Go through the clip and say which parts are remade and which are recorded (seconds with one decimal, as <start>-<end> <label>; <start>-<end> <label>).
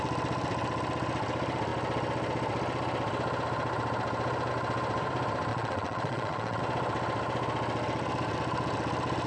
0.0-5.5 recorded; 5.5-6.6 remade; 6.6-9.3 recorded